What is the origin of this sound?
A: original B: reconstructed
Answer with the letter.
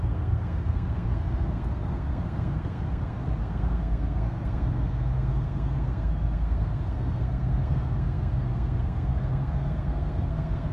B